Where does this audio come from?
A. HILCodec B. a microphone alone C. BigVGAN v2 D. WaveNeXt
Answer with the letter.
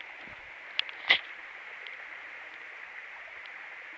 B